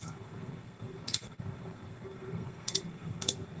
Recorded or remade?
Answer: remade